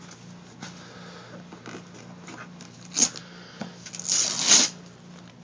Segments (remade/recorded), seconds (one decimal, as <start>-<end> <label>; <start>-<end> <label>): 0.0-3.2 recorded; 3.2-3.9 remade; 3.9-5.4 recorded